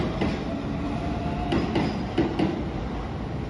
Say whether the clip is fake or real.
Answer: real